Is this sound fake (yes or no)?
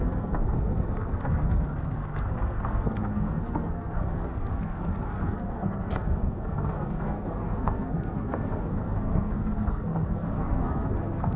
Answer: yes